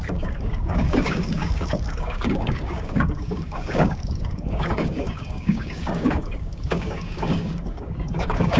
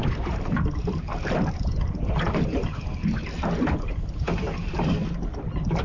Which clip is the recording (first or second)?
second